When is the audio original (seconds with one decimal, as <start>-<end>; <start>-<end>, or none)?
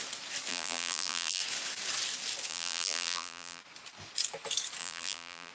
0.0-0.5; 1.4-2.5; 3.6-4.8